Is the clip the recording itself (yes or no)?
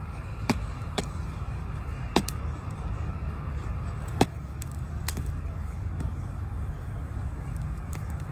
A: no